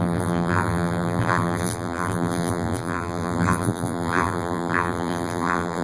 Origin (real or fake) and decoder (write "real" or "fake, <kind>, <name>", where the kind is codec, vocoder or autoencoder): fake, vocoder, BigVGAN v2